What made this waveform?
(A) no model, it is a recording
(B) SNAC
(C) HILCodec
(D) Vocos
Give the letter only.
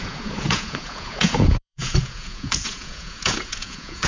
D